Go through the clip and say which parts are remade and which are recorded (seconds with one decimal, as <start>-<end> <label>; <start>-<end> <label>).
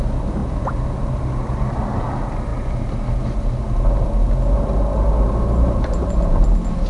0.0-6.9 recorded